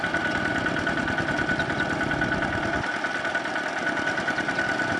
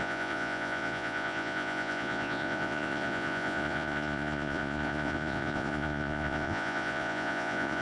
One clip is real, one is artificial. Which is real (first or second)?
first